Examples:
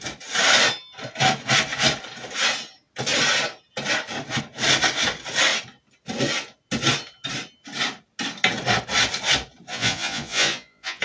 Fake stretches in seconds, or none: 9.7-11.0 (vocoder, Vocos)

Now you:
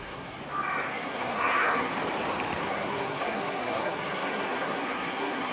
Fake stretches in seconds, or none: 0.0-0.4 (codec, SNAC); 0.9-1.9; 2.6-5.5

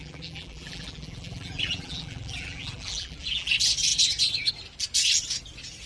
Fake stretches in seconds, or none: 0.0-3.5 (vocoder, BigVGAN v2)

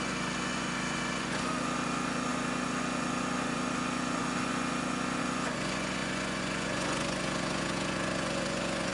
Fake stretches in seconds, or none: 0.0-8.9 (vocoder, Vocos)